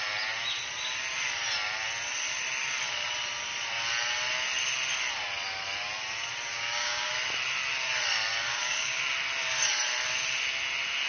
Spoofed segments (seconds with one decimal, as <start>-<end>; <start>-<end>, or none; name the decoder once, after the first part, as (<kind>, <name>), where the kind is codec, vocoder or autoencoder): 6.5-7.1 (codec, DAC); 8.5-9.0